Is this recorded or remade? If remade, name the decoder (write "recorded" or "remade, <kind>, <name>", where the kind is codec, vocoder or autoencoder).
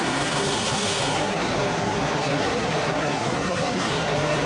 remade, codec, SNAC